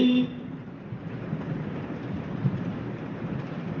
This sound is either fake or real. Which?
fake